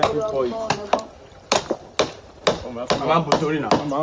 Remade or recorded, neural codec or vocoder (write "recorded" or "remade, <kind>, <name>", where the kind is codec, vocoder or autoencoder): recorded